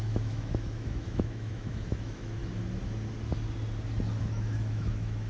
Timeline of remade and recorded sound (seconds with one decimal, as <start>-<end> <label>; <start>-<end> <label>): 0.0-2.4 remade; 2.4-4.2 recorded; 4.2-5.3 remade